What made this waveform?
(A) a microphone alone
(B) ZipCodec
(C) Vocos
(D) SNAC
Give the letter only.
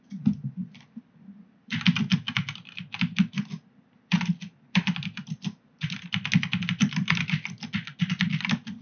A